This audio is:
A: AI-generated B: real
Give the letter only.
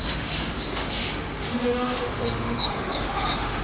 A